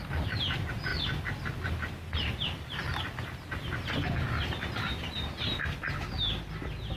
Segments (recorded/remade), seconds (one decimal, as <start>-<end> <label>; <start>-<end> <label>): 0.0-7.0 recorded

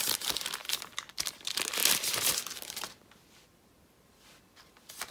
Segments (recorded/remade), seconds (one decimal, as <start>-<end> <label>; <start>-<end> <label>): 0.0-0.6 recorded; 0.6-1.2 remade; 1.2-1.8 recorded; 1.8-5.1 remade

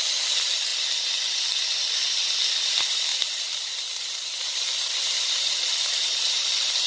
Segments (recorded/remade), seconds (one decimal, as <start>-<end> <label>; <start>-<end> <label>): 0.0-3.1 recorded; 3.1-6.9 remade